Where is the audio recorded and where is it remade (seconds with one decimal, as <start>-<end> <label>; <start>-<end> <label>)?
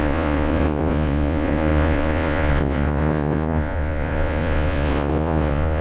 0.0-5.8 remade